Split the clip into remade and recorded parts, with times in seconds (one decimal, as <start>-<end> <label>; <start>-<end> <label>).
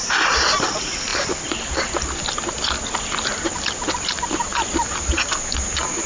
0.0-4.5 recorded; 4.5-5.2 remade; 5.2-6.1 recorded